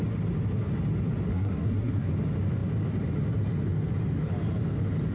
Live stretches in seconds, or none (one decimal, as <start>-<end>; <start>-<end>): 0.0-1.3; 2.1-5.1